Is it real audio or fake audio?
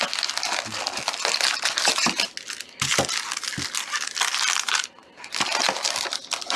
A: real